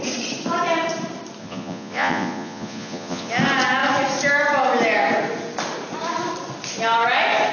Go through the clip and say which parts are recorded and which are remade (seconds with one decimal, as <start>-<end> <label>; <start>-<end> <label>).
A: 0.0-1.4 recorded; 1.4-3.3 remade; 3.3-7.5 recorded